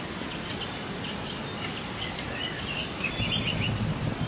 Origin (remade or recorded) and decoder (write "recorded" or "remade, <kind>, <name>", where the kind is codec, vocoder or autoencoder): recorded